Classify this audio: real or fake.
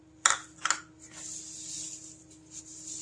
real